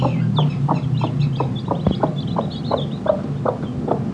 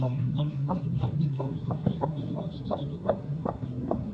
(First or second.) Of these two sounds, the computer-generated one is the second